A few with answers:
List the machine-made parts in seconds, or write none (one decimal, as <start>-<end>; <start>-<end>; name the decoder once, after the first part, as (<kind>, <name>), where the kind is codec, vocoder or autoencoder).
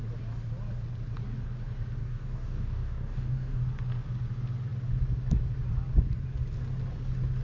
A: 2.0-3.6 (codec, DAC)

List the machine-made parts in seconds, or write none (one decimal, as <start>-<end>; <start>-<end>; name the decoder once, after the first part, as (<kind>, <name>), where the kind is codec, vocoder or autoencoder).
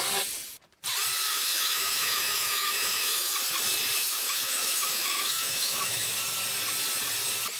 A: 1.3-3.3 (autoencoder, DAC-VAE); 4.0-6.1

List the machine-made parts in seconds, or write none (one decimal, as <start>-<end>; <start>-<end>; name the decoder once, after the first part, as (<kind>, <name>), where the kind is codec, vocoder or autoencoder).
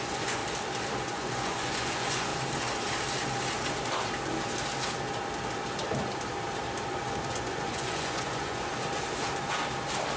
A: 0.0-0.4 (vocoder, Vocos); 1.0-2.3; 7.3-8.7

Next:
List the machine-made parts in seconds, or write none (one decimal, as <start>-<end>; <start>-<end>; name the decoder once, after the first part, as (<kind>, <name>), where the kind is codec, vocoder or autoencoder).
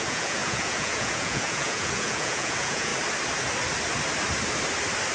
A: 0.0-2.9 (vocoder, Vocos)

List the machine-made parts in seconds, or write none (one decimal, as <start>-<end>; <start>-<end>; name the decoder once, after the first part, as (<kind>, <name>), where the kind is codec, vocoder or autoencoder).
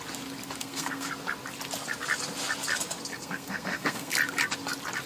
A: 0.6-1.1 (codec, SNAC); 3.1-4.1